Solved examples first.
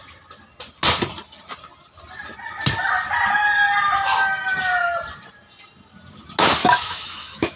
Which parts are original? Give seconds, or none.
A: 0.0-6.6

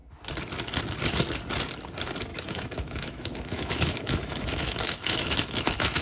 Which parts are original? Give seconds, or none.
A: 0.0-2.3

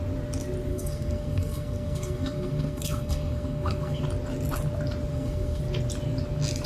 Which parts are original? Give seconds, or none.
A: 0.0-0.7; 4.0-5.1; 5.6-6.7

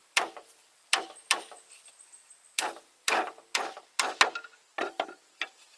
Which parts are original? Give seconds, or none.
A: 0.0-5.8

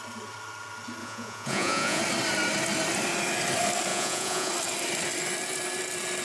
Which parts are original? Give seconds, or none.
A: 0.0-1.0; 2.0-3.9; 4.5-6.2

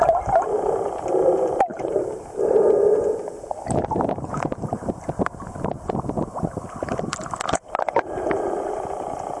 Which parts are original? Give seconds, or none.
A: 0.0-9.4

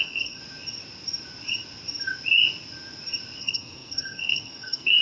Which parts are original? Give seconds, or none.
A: 0.4-3.4

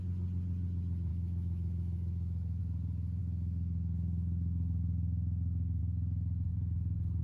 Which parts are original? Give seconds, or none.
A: 0.0-1.1; 2.6-3.2; 5.8-7.2